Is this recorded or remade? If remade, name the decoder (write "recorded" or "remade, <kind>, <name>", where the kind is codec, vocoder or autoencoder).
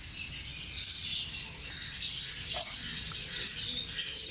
remade, vocoder, BigVGAN v2